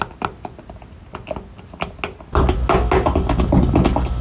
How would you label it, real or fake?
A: real